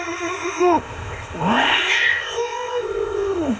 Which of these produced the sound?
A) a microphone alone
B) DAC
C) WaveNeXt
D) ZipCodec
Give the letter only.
D